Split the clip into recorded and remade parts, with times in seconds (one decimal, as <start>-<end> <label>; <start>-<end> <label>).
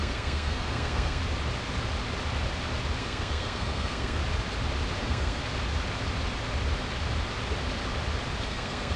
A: 0.0-1.2 remade; 1.2-3.0 recorded; 3.0-4.2 remade; 4.2-5.0 recorded; 5.0-5.4 remade; 5.4-8.4 recorded; 8.4-9.0 remade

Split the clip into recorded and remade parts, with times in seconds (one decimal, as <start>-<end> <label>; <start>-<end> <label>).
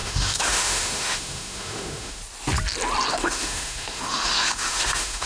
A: 0.0-2.2 remade; 2.2-3.1 recorded; 3.1-5.3 remade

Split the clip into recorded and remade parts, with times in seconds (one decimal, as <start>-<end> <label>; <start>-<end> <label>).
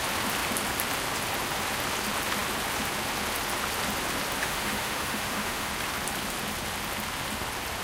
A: 0.0-4.4 recorded; 4.4-5.7 remade; 5.7-7.8 recorded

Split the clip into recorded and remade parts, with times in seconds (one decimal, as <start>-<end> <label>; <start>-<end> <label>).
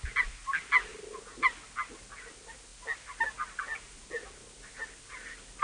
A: 0.0-5.6 recorded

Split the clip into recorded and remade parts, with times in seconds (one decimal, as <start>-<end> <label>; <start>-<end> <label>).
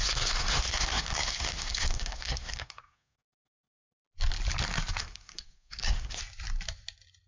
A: 0.0-4.0 remade; 4.0-5.0 recorded; 5.0-6.2 remade; 6.2-7.3 recorded